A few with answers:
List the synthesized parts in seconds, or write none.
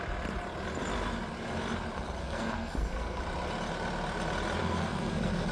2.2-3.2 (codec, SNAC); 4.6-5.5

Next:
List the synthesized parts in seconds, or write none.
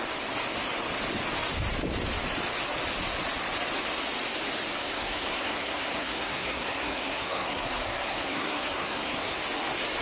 4.8-9.4 (codec, SNAC)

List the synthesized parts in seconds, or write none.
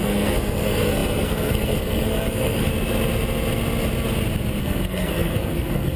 0.0-2.7 (codec, SNAC); 4.6-6.0